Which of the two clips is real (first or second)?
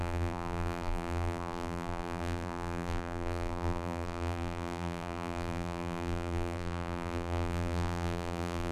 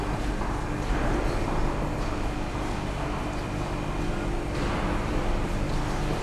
second